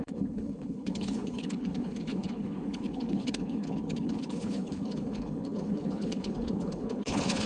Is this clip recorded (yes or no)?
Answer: no